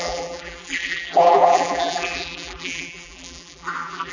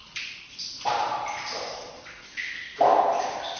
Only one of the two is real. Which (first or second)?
second